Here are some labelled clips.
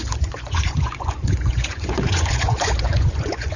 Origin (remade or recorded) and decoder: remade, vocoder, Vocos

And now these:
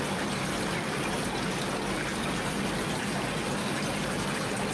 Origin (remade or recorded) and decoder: recorded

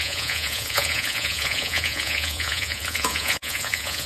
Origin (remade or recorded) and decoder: remade, vocoder, Vocos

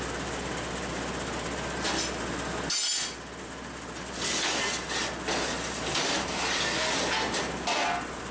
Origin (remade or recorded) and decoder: recorded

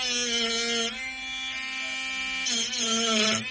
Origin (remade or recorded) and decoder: recorded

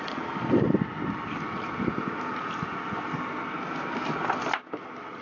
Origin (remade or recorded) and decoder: recorded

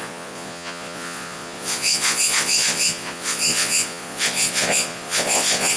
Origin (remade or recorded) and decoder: remade, vocoder, Vocos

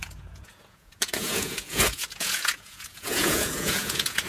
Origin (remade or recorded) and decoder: remade, vocoder, Vocos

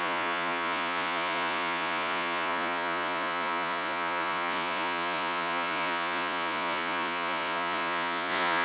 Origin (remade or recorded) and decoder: remade, vocoder, Vocos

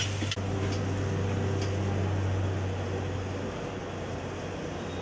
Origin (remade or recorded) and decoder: recorded